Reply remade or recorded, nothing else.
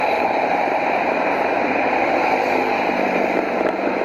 remade